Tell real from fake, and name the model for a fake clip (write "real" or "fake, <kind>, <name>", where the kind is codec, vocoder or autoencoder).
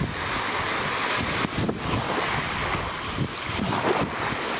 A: real